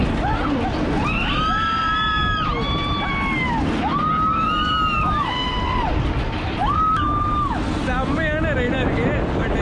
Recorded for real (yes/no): yes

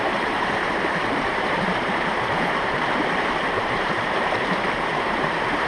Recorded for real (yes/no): no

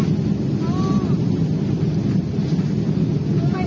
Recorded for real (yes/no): yes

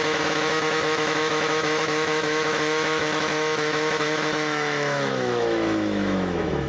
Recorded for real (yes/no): no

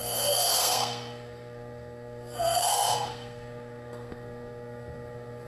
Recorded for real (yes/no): no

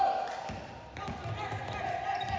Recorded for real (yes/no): no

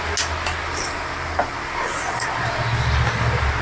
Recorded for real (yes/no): yes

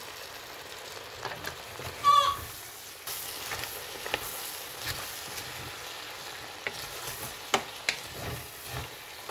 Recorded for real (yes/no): yes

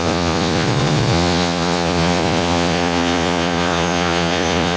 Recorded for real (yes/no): no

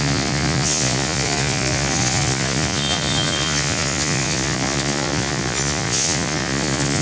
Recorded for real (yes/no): no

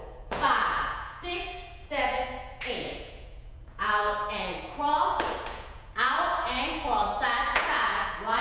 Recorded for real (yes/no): no